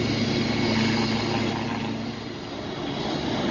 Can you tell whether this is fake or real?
real